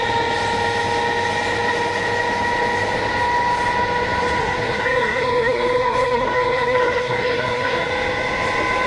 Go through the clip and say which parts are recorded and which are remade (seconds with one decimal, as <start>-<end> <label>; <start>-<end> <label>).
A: 0.0-4.4 recorded; 4.4-7.9 remade; 7.9-8.9 recorded